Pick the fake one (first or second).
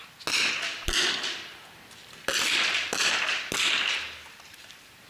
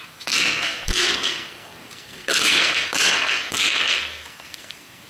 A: second